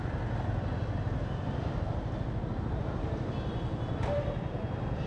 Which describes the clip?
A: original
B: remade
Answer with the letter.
A